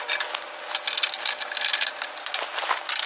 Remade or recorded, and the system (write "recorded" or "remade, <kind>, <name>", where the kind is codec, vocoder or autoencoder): recorded